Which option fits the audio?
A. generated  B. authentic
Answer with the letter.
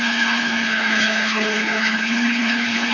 A